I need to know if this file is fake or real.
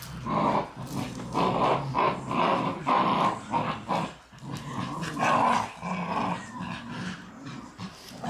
real